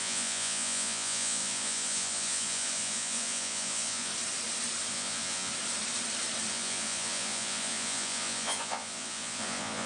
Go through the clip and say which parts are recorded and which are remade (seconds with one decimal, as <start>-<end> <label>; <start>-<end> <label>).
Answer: 0.0-4.1 remade; 4.1-4.9 recorded; 4.9-5.5 remade; 5.5-6.5 recorded; 6.5-9.9 remade